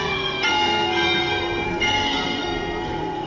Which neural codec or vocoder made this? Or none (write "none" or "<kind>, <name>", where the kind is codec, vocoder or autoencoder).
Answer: codec, SNAC